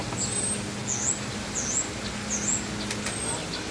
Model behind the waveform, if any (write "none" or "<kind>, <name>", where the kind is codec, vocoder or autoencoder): none